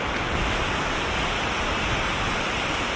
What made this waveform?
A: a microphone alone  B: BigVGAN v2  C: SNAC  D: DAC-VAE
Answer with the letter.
A